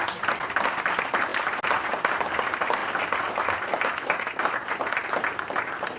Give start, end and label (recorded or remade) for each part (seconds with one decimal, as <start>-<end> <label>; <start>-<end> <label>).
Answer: 0.0-6.0 recorded